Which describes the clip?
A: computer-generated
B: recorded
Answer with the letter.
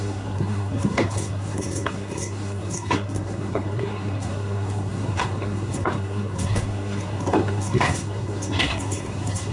A